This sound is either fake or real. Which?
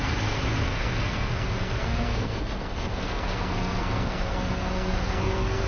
fake